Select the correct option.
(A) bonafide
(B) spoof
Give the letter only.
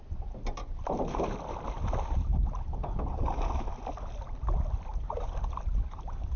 A